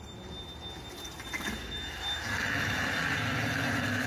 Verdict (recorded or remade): recorded